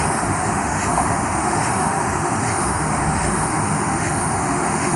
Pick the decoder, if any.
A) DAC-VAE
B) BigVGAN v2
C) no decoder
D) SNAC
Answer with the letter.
A